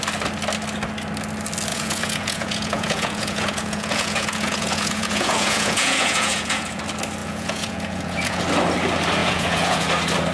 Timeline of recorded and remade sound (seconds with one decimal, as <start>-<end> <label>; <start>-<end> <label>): 0.0-1.7 recorded; 1.7-6.8 remade; 6.8-7.2 recorded; 7.2-8.4 remade; 8.4-9.2 recorded; 9.2-9.9 remade; 9.9-10.3 recorded